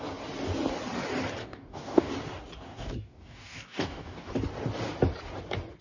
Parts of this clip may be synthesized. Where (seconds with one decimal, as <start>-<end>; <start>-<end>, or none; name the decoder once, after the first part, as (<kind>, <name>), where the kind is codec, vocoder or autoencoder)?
1.4-2.1 (codec, DAC); 2.7-4.3